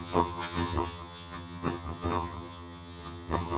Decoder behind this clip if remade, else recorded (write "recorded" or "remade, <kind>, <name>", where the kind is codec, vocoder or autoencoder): remade, vocoder, HiFi-GAN